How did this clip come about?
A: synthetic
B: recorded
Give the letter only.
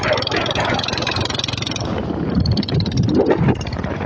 A